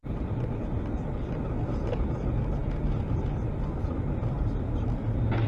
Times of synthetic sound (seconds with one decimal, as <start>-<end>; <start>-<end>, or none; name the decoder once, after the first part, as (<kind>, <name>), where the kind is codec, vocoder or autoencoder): 0.0-1.3 (vocoder, BigVGAN v2)